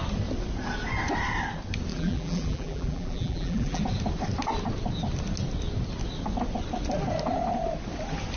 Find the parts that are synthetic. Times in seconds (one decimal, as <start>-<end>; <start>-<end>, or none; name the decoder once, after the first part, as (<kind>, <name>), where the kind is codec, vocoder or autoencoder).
1.9-3.8 (vocoder, BigVGAN v2)